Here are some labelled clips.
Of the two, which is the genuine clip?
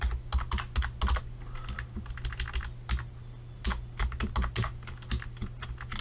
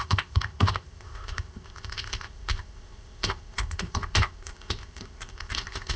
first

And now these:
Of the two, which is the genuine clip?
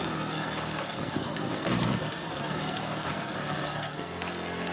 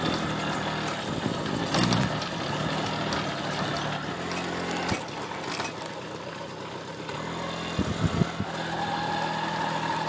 second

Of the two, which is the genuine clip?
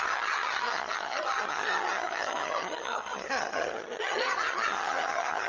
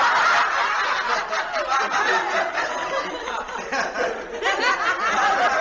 second